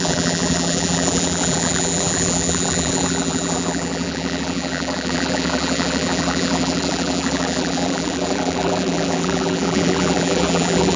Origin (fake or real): fake